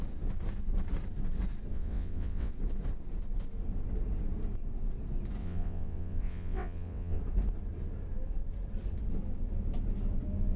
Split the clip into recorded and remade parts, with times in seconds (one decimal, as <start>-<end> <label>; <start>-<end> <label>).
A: 0.0-1.7 recorded; 1.7-2.5 remade; 2.5-5.4 recorded; 5.4-7.2 remade; 7.2-10.6 recorded